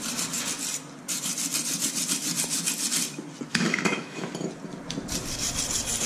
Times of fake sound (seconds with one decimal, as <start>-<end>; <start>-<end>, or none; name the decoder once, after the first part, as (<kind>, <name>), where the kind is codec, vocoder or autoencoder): 3.5-4.3 (autoencoder, DAC-VAE)